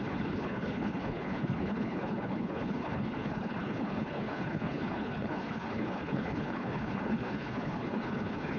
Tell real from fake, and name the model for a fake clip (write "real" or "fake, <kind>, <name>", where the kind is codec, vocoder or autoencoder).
fake, codec, HILCodec